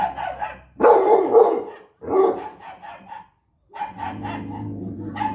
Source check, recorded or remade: recorded